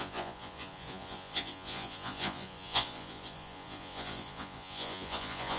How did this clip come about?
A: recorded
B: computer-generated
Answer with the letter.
B